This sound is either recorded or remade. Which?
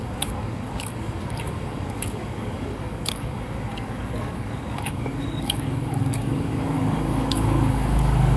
remade